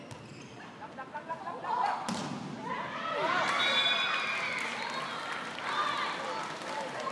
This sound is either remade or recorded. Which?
recorded